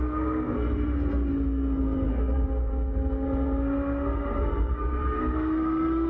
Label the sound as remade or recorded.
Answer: remade